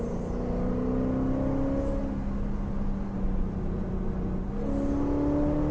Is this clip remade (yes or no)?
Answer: no